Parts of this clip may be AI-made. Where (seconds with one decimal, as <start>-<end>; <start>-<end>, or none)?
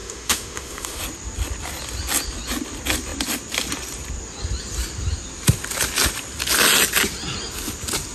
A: 0.0-1.0